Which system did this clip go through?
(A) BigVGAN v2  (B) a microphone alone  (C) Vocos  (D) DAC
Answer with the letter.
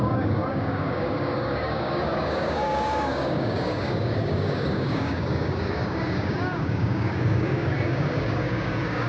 D